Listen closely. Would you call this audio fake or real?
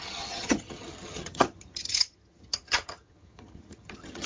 fake